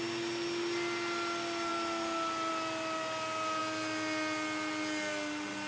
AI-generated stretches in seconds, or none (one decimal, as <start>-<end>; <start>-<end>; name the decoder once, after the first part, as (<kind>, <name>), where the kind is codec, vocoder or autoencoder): none